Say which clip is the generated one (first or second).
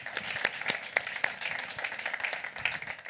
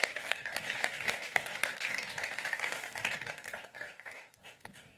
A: second